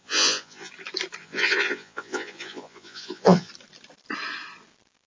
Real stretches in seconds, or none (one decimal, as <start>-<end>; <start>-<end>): 0.7-1.2; 3.5-5.1